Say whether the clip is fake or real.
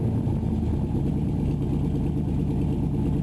real